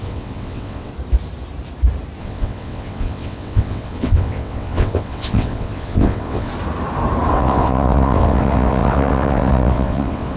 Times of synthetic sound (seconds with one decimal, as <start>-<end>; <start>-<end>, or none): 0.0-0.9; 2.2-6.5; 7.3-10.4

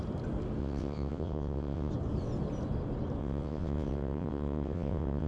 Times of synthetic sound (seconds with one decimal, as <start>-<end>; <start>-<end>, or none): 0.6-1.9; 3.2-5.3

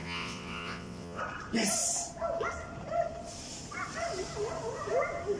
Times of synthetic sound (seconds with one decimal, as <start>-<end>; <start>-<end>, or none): 0.0-1.2